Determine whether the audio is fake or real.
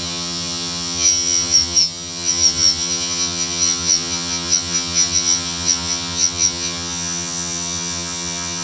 fake